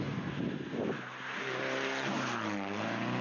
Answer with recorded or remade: recorded